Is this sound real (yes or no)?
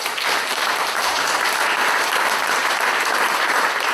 no